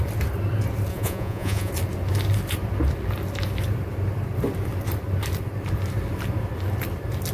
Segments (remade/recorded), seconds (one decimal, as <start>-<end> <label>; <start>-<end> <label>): 0.0-0.9 recorded; 0.9-1.7 remade; 1.7-7.3 recorded